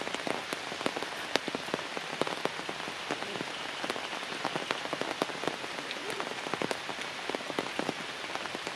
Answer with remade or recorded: recorded